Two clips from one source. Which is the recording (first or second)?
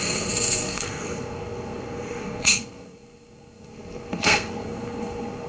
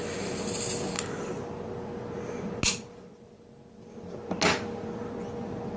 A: second